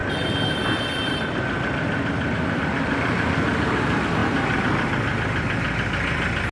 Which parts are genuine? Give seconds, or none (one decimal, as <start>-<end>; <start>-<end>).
0.0-6.5

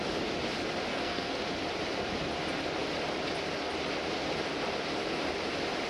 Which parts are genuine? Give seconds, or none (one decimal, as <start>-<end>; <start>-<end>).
0.0-0.9; 1.4-5.9

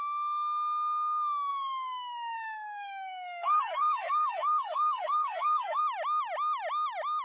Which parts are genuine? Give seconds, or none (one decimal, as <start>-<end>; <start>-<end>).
0.0-1.5; 5.8-7.2

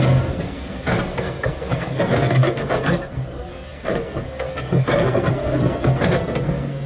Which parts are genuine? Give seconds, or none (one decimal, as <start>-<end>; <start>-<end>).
none

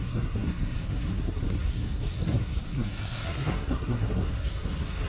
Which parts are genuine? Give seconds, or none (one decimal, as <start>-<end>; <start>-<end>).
none